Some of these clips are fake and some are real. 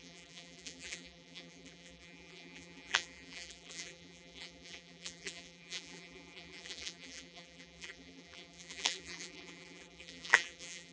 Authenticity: fake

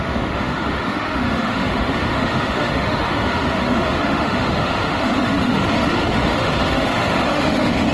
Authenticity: fake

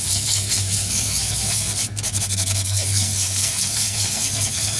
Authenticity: fake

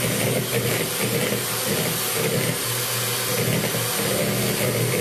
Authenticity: real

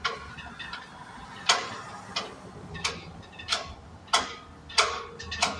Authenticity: real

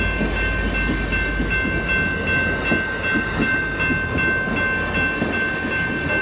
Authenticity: real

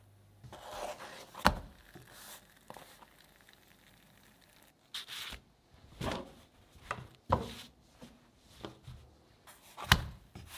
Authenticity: real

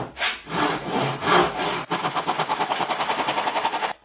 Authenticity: real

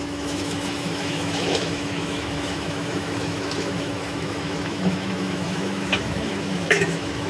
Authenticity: fake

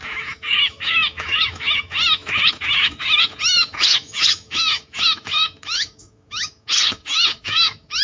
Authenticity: fake